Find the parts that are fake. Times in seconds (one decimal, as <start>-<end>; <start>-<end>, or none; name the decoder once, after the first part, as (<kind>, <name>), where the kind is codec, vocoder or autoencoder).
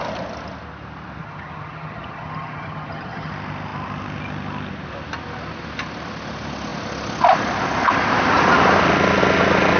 1.2-3.3 (vocoder, HiFi-GAN)